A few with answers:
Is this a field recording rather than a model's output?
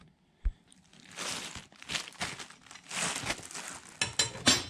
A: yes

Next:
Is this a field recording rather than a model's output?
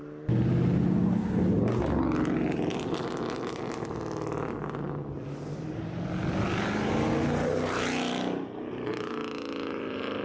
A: yes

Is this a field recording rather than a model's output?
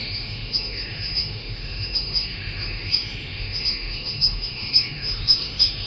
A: no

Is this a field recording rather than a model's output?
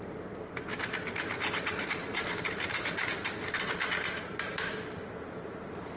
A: yes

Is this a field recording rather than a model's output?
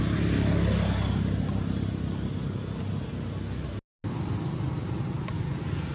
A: yes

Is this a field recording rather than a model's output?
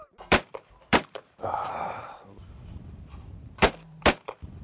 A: no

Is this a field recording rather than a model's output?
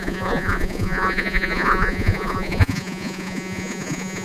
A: no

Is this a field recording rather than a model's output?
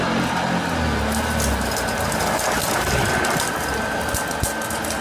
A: yes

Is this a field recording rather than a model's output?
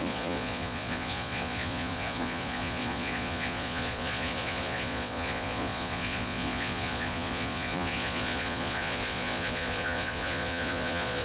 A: no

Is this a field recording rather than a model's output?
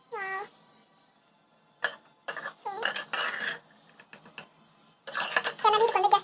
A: yes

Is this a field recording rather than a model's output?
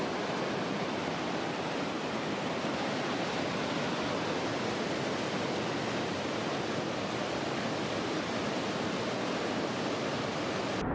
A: no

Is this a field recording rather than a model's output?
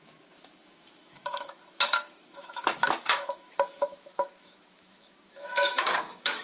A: no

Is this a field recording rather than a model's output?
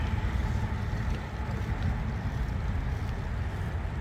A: yes